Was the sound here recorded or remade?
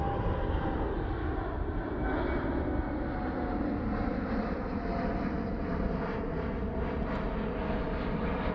recorded